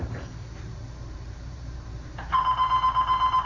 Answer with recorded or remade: remade